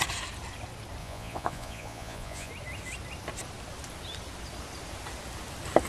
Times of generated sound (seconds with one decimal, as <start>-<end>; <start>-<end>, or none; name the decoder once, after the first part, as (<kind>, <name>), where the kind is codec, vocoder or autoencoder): 1.0-2.5 (vocoder, Vocos)